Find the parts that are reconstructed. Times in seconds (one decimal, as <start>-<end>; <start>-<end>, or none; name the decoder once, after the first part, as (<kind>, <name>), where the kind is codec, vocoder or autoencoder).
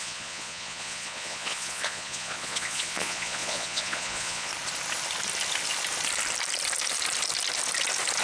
0.0-4.5 (vocoder, Vocos)